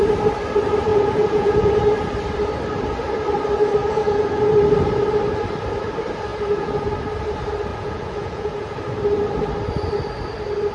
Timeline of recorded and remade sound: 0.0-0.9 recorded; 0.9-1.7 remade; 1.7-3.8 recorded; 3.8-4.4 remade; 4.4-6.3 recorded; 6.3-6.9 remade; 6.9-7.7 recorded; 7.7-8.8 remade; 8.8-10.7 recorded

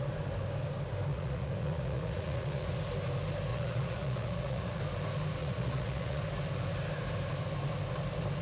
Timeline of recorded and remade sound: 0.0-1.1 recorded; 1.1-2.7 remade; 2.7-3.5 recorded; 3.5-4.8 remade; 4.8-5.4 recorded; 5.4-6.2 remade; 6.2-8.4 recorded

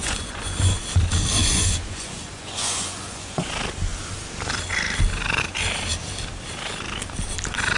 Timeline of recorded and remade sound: 0.0-0.8 remade; 0.8-1.4 recorded; 1.4-3.5 remade; 3.5-7.8 recorded

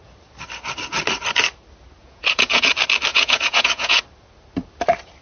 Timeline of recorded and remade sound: 0.0-2.0 recorded; 2.0-2.7 remade; 2.7-3.1 recorded; 3.1-4.0 remade; 4.0-5.2 recorded

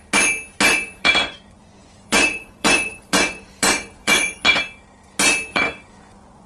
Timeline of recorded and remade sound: 0.0-0.7 recorded; 0.7-4.6 remade; 4.6-5.5 recorded; 5.5-6.5 remade

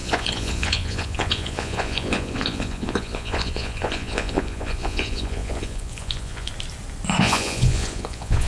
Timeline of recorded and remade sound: 0.0-6.5 remade; 6.5-7.2 recorded; 7.2-8.5 remade

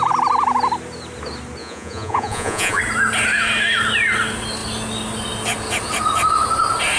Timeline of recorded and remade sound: 0.0-1.6 recorded; 1.6-2.8 remade; 2.8-7.0 recorded